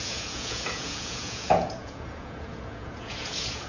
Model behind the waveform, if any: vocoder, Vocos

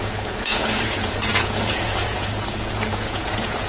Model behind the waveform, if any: vocoder, Vocos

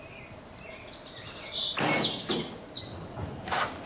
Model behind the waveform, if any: none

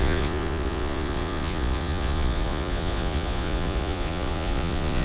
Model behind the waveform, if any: vocoder, Vocos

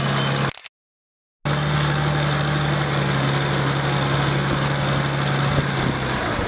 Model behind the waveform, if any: none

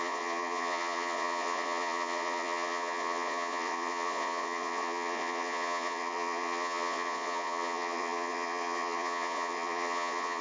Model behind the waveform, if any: vocoder, Vocos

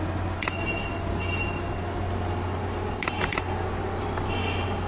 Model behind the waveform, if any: none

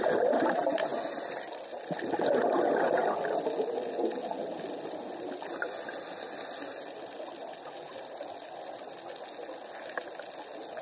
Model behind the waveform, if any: none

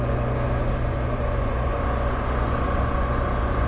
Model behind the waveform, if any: vocoder, Vocos